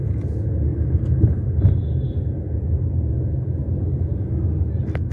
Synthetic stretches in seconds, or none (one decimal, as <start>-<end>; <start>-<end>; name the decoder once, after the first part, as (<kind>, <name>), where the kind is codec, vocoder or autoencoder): none